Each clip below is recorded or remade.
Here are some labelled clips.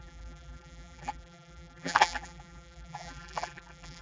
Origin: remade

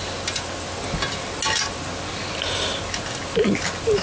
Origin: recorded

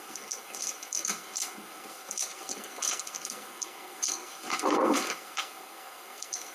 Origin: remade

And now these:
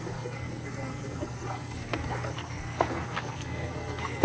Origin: remade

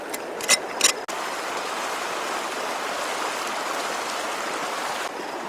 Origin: recorded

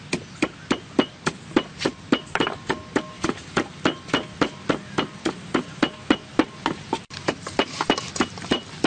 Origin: recorded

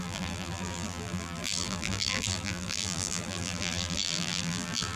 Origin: remade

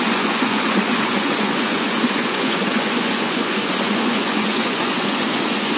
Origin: remade